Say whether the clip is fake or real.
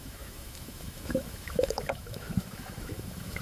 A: fake